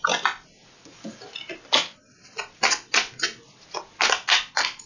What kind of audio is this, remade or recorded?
recorded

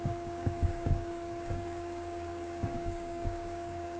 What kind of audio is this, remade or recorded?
remade